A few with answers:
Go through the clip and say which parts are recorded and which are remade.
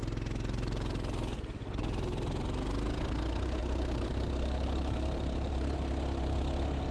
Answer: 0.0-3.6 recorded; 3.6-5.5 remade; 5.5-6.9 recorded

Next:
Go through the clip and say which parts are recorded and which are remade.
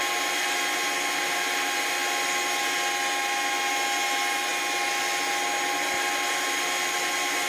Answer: 0.0-7.5 recorded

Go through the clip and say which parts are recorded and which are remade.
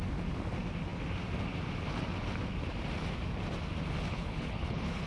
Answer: 0.0-4.1 recorded; 4.1-5.1 remade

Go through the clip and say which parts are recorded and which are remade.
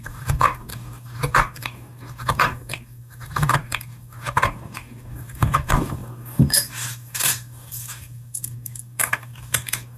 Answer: 0.0-10.0 remade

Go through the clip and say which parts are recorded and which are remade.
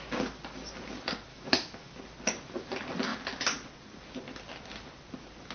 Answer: 0.0-1.3 recorded; 1.3-2.0 remade; 2.0-5.5 recorded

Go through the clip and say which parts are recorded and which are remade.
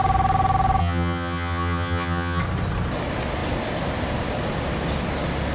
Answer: 0.0-0.8 recorded; 0.8-2.4 remade; 2.4-5.5 recorded